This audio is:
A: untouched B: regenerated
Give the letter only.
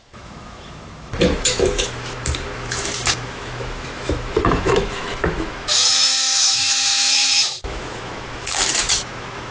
B